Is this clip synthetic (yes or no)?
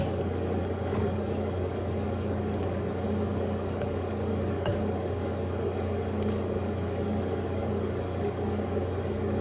yes